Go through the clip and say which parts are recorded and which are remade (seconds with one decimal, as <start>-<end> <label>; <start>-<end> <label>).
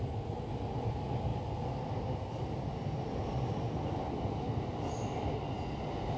0.0-6.2 recorded